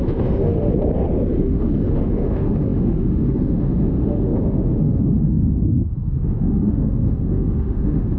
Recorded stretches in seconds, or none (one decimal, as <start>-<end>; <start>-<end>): 0.7-1.3